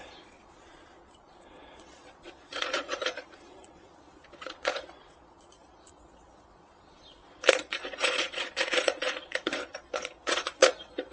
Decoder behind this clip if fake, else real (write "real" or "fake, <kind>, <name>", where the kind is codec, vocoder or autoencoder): fake, vocoder, Vocos